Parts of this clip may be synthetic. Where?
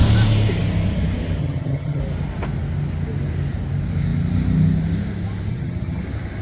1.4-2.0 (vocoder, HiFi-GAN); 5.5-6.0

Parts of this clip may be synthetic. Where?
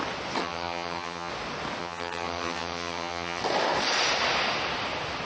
0.4-1.3 (vocoder, HiFi-GAN); 1.8-3.4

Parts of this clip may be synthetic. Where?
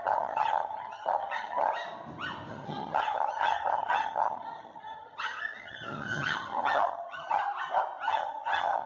0.0-1.7 (vocoder, HiFi-GAN); 2.5-7.4; 8.1-8.9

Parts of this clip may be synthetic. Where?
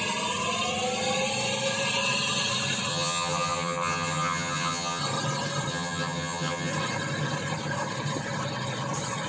2.9-5.0 (vocoder, HiFi-GAN); 5.7-6.7